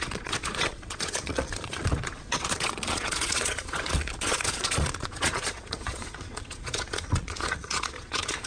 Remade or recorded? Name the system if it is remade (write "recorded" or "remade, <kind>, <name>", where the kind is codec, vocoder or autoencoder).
remade, vocoder, Vocos